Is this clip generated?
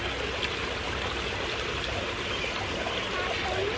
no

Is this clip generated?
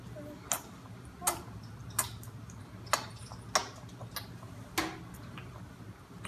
no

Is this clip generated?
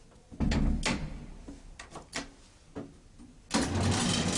no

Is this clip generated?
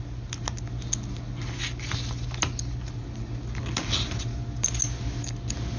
no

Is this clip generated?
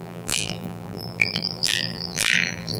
yes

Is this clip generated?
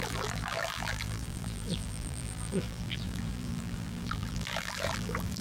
yes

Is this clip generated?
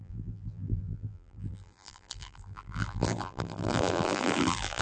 yes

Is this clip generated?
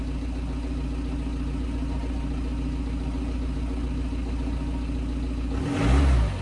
no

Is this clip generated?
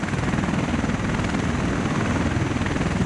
yes